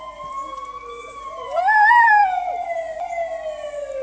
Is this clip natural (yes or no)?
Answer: yes